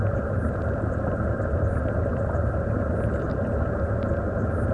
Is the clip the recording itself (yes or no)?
yes